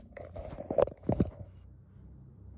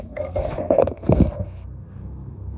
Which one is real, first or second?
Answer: first